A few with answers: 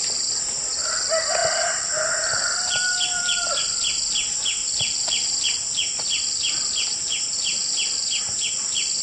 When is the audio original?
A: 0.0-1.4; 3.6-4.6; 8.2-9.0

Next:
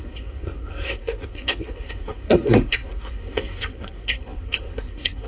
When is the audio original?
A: none

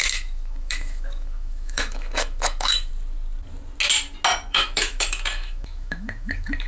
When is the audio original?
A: 2.9-4.5

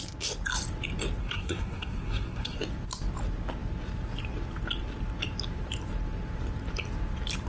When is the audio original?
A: 0.0-1.2; 2.6-7.5

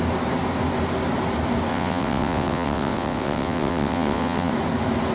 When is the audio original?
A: 0.0-1.7; 4.5-5.1

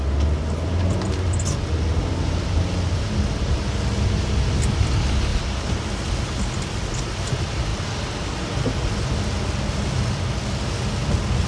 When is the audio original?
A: 0.0-11.5